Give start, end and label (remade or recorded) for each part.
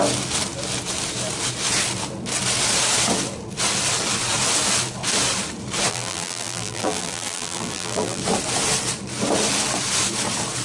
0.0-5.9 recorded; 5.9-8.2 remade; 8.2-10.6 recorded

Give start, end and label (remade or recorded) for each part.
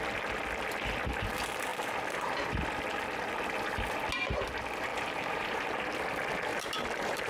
0.0-4.9 recorded; 4.9-5.8 remade; 5.8-6.5 recorded; 6.5-7.3 remade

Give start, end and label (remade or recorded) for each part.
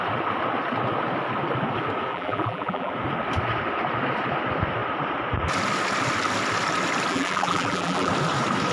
0.0-2.1 recorded; 2.1-2.9 remade; 2.9-7.1 recorded; 7.1-8.1 remade; 8.1-8.7 recorded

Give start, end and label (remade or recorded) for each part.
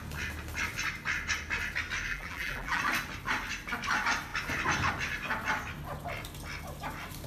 0.0-2.1 recorded; 2.1-2.8 remade; 2.8-7.3 recorded